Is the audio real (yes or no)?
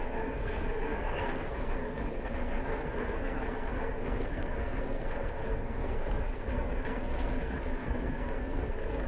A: no